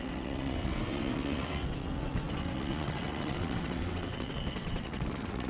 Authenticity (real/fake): fake